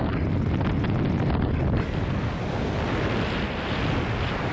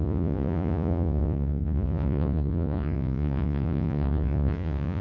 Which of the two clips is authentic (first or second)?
first